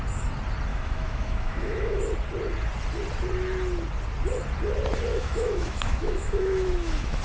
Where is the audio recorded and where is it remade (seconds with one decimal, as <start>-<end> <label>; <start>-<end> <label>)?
0.0-0.7 recorded; 0.7-2.0 remade; 2.0-5.1 recorded; 5.1-7.2 remade